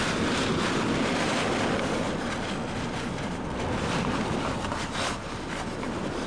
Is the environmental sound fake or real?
real